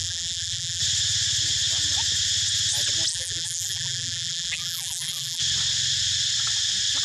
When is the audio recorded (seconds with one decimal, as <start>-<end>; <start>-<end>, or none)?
0.8-3.1; 5.4-7.0

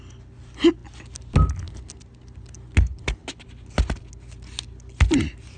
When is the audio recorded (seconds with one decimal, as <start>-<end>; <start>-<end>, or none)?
0.0-5.6

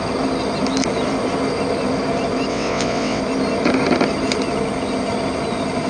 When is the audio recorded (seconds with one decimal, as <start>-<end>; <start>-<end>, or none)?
0.0-2.5; 3.2-5.9

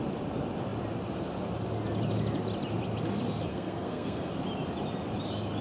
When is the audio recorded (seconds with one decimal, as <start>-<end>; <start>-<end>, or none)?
0.0-3.5; 4.4-5.6

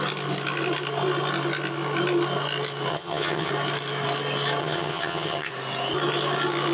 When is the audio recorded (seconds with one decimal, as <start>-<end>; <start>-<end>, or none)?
0.0-2.9; 3.5-4.6; 5.5-6.7